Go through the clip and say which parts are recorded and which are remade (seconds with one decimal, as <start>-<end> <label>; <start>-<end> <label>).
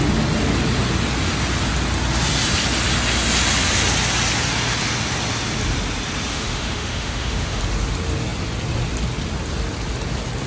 0.0-6.3 recorded; 6.3-7.6 remade; 7.6-10.5 recorded